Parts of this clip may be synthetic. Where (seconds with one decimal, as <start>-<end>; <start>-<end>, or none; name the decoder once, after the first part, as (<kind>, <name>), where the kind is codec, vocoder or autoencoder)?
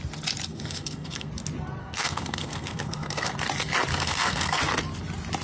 0.5-1.3 (codec, SNAC); 1.8-3.3; 3.9-4.6